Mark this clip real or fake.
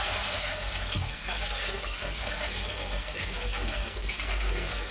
fake